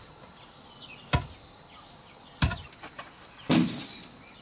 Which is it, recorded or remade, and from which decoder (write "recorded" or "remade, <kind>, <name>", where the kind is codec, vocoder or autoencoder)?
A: recorded